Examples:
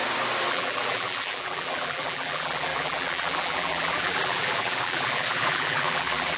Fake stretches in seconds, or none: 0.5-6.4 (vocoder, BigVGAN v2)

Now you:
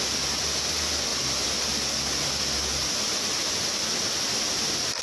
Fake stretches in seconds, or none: none

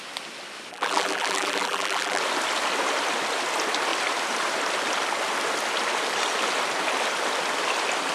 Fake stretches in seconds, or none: 0.7-2.2 (vocoder, BigVGAN v2)

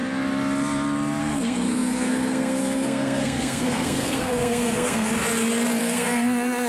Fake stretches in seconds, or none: 1.2-5.1 (codec, SNAC); 5.8-6.7

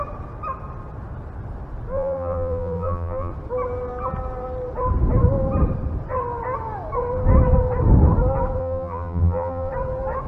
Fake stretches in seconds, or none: 1.9-3.3 (vocoder, BigVGAN v2); 8.6-9.7

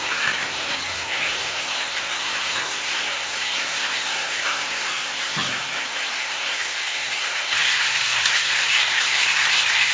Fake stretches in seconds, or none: 0.0-9.9 (codec, SNAC)

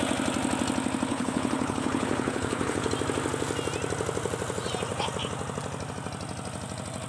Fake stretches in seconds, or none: 1.1-2.9 (codec, HILCodec)

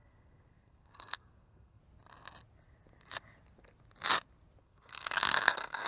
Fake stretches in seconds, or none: 0.0-1.8 (codec, SNAC); 4.6-5.9